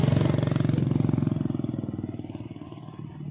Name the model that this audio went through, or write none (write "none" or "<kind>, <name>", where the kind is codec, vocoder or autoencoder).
none